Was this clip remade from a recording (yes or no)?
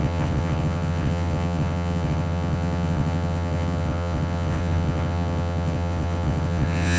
yes